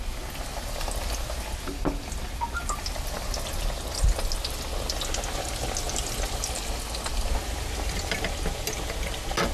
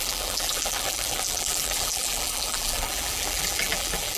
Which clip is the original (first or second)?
first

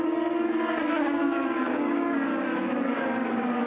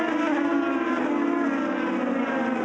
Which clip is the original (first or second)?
second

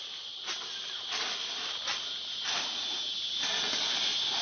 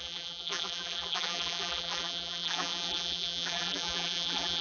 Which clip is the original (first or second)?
first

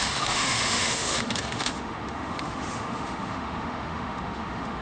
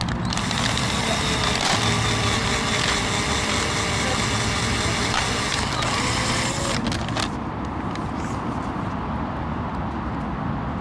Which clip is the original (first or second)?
second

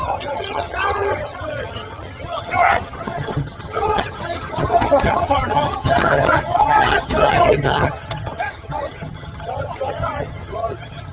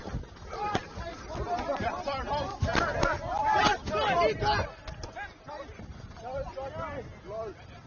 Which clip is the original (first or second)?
second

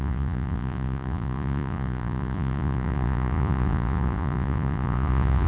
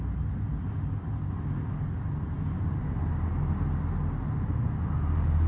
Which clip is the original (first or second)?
second